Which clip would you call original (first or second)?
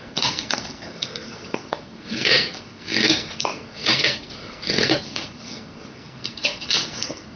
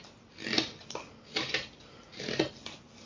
second